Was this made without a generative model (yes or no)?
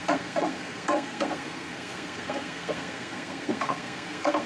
no